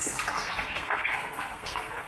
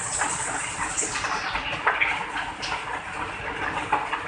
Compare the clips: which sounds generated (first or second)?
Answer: first